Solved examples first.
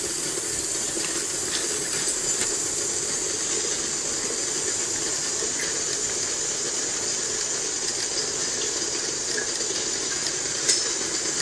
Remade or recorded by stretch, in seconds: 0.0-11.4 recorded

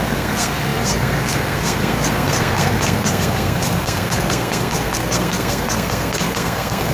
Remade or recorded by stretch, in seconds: 0.0-6.9 remade

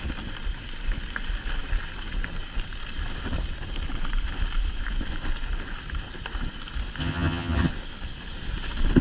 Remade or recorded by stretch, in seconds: 0.0-7.0 recorded; 7.0-7.7 remade; 7.7-9.0 recorded

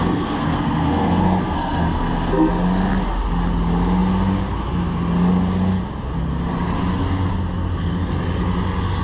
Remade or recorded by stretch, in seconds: 0.0-2.5 remade; 2.5-9.0 recorded

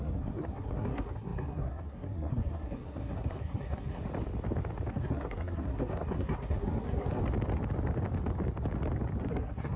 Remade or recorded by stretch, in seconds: 0.0-4.0 remade; 4.0-4.9 recorded; 4.9-7.2 remade; 7.2-9.3 recorded; 9.3-9.8 remade